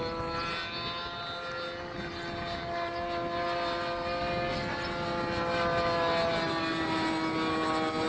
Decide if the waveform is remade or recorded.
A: recorded